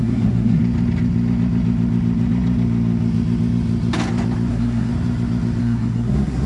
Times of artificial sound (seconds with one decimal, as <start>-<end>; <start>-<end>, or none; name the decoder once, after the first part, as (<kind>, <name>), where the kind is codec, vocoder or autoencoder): 0.0-0.6 (codec, SNAC); 4.5-4.9; 5.6-6.5